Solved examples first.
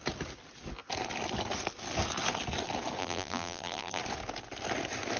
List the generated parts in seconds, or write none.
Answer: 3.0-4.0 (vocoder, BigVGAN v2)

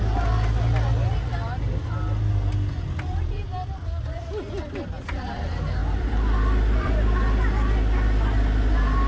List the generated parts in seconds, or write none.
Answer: 5.8-6.9 (vocoder, BigVGAN v2)

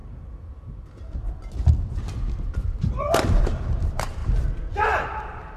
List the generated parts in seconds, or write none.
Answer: 3.4-4.2 (vocoder, BigVGAN v2); 4.9-5.6

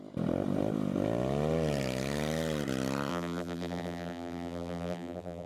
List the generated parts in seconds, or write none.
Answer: 3.1-5.5 (vocoder, BigVGAN v2)

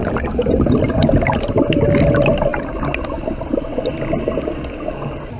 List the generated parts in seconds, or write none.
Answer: 0.0-1.9 (vocoder, BigVGAN v2)

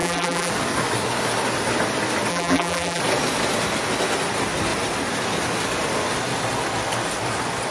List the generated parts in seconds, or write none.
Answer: 0.0-0.5 (vocoder, BigVGAN v2); 2.3-3.0

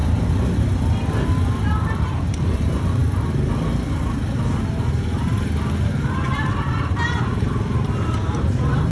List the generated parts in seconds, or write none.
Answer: 2.0-3.0 (vocoder, BigVGAN v2); 6.1-7.3; 7.8-8.9

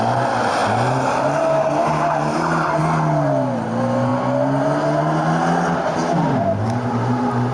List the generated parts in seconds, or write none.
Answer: 1.8-2.8 (vocoder, BigVGAN v2)